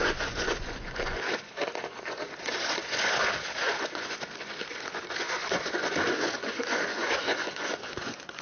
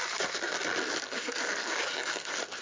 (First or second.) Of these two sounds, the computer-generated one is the first